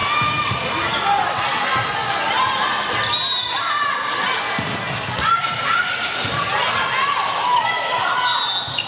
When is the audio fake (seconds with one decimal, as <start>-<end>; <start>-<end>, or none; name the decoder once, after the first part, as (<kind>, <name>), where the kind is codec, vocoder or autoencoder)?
none